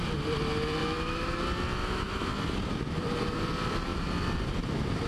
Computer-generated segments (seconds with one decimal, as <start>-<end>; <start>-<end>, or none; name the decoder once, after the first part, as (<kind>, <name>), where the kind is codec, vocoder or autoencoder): 0.8-1.4 (autoencoder, DAC-VAE); 1.8-2.3